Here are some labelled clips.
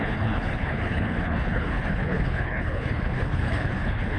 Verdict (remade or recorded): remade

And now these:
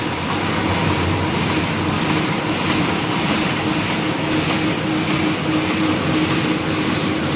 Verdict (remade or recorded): recorded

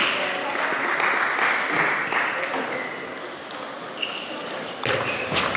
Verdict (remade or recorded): recorded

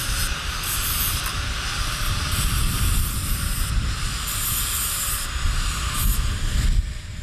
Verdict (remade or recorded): remade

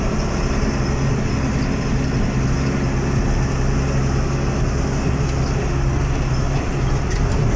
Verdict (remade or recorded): recorded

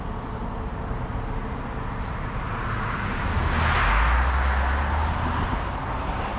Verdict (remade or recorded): recorded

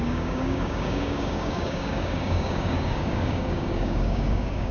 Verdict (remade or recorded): remade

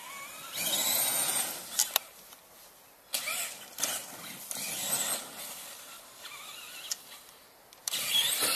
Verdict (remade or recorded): recorded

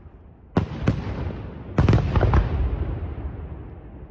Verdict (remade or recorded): recorded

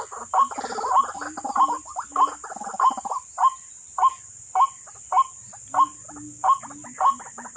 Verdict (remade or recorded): recorded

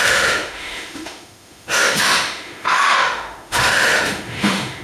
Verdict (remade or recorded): remade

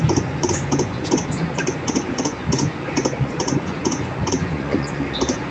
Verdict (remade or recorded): remade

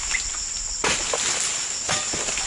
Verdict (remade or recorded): recorded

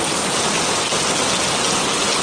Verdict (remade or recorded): recorded